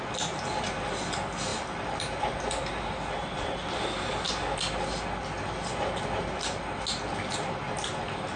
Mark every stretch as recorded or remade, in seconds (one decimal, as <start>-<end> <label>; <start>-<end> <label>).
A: 0.0-8.4 recorded